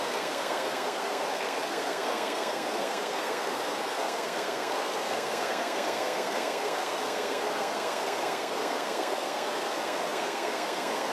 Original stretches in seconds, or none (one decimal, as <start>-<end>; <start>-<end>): none